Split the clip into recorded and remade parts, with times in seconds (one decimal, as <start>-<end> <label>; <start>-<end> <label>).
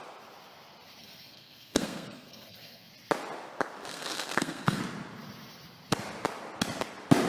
0.0-1.0 recorded; 1.0-2.9 remade; 2.9-3.9 recorded; 3.9-4.8 remade; 4.8-7.3 recorded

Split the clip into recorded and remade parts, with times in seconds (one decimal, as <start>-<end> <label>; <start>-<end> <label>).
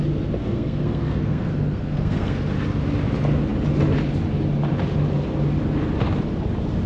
0.0-0.4 recorded; 0.4-2.4 remade; 2.4-6.9 recorded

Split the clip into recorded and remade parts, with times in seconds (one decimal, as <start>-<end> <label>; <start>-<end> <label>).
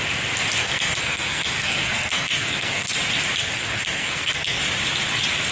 0.0-0.6 recorded; 0.6-2.9 remade; 2.9-3.4 recorded; 3.4-4.6 remade; 4.6-5.5 recorded